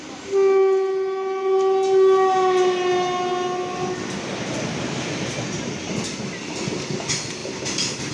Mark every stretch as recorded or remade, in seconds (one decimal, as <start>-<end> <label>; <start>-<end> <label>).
0.0-7.4 recorded; 7.4-8.1 remade